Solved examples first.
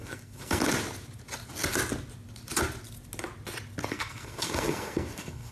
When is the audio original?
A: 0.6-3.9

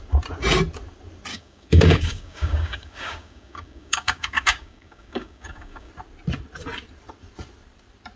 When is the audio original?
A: 0.0-1.3; 5.9-8.2

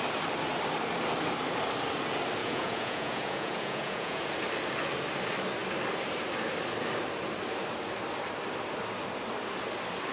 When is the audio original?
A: 0.0-2.4; 4.3-10.1